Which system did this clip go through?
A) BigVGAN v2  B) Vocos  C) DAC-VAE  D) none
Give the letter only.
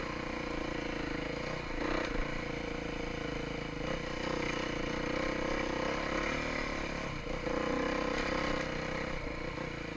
D